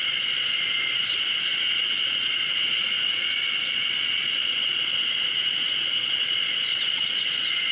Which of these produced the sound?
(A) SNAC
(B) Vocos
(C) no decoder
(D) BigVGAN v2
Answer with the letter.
B